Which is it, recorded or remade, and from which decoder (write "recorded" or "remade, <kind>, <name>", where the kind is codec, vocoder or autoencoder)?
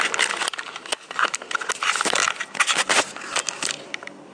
recorded